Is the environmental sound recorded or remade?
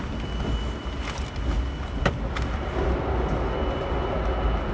recorded